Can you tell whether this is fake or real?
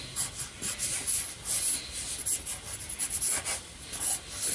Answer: real